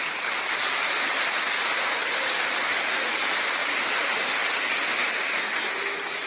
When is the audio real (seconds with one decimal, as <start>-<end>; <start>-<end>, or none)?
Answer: 0.0-0.6; 1.4-3.6; 4.3-4.9; 5.4-6.3

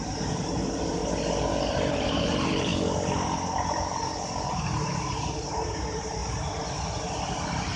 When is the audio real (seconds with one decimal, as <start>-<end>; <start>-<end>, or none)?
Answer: 1.0-1.7; 2.7-4.5; 6.2-7.8